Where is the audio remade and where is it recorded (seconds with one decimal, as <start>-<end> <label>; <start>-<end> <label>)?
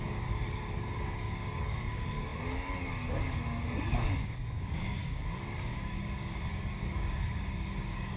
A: 0.0-8.2 remade